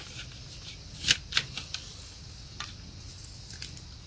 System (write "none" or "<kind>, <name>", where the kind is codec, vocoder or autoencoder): none